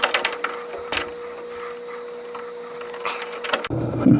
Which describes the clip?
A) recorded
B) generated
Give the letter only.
A